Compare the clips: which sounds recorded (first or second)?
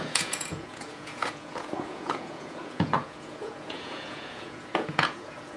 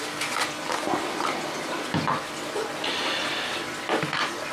second